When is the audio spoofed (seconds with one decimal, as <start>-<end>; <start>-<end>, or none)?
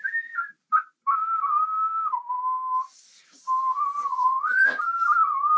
4.1-4.8